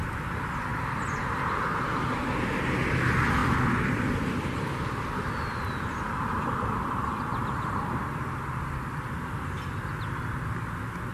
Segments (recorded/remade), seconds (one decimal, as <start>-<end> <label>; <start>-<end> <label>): 0.0-0.7 recorded; 0.7-1.6 remade; 1.6-3.4 recorded; 3.4-6.4 remade; 6.4-7.3 recorded; 7.3-9.2 remade; 9.2-11.1 recorded